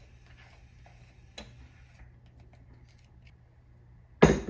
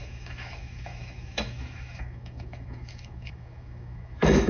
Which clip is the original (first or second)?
first